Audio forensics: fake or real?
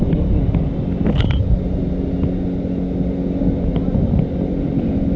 real